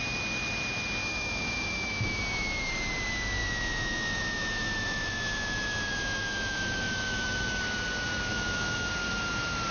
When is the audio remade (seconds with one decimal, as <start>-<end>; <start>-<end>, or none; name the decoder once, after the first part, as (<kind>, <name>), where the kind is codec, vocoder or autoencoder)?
1.0-2.7 (autoencoder, DAC-VAE); 3.4-7.6; 8.3-8.9